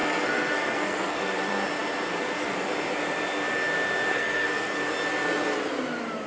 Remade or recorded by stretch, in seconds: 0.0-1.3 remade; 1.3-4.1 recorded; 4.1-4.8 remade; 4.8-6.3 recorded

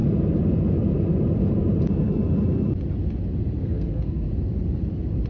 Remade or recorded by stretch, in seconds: 0.0-3.6 recorded; 3.6-4.3 remade; 4.3-5.3 recorded